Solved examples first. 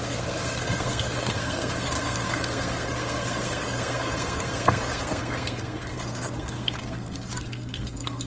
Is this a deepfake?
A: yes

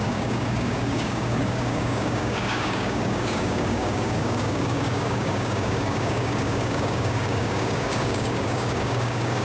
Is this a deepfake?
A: yes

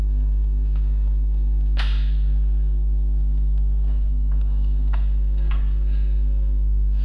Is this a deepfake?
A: yes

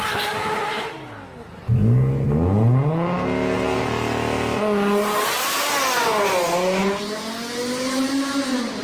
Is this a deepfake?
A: no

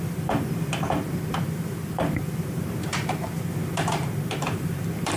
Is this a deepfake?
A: yes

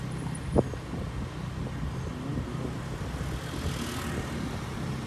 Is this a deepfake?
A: no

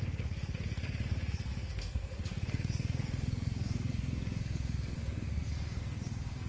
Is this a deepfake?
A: yes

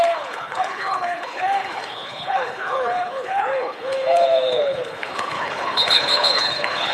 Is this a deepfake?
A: yes